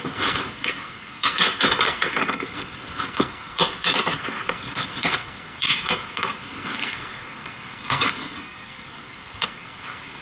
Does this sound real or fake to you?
fake